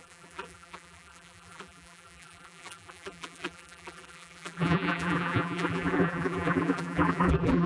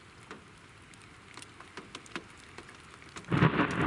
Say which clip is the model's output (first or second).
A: first